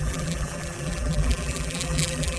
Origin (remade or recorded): remade